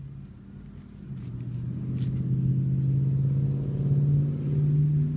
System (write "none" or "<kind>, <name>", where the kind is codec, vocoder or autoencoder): none